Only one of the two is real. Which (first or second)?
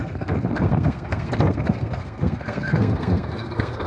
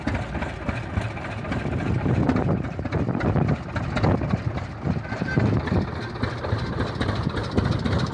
second